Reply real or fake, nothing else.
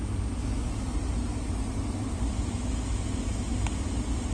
real